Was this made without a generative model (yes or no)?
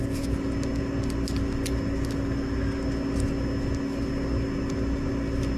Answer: yes